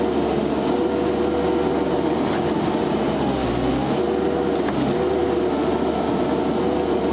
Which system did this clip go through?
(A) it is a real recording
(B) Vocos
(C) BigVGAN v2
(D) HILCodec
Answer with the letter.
A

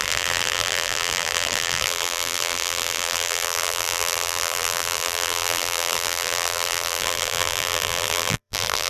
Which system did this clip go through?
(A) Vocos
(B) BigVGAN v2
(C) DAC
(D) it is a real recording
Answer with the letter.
B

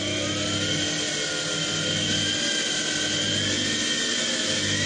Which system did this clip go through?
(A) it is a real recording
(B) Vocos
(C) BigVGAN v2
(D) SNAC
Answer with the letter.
A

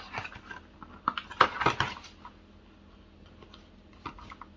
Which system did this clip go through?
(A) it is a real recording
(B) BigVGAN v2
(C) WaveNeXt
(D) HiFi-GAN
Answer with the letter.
A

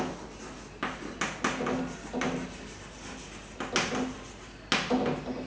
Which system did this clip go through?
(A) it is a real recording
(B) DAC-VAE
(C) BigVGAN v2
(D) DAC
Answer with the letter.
A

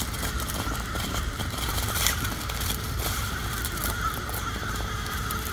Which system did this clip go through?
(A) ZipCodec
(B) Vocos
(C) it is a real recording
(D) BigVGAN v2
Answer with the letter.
D